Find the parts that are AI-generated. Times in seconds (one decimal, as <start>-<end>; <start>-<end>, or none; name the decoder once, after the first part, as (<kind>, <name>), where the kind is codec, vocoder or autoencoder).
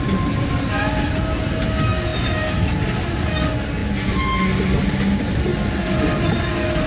none